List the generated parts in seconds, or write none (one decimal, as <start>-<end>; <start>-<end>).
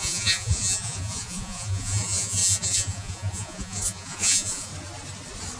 0.0-4.7